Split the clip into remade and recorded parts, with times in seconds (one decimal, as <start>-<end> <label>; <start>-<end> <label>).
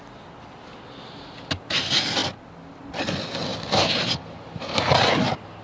0.0-3.5 recorded; 3.5-4.8 remade; 4.8-5.6 recorded